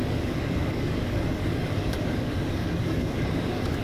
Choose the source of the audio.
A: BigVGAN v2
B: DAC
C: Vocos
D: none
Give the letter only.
B